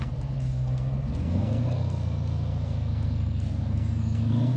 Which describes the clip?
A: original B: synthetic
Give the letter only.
B